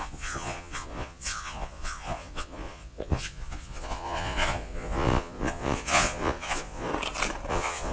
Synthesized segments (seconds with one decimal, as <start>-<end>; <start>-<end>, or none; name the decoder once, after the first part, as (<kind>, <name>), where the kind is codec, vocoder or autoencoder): 0.0-6.9 (vocoder, Vocos); 7.5-7.9